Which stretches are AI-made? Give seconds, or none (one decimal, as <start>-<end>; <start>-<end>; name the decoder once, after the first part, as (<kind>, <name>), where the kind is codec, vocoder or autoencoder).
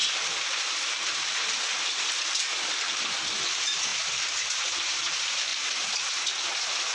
0.0-3.4 (vocoder, BigVGAN v2); 5.5-6.1